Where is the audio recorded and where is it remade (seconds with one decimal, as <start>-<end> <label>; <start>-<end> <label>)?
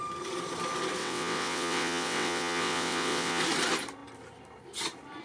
0.0-1.0 recorded; 1.0-3.4 remade; 3.4-5.2 recorded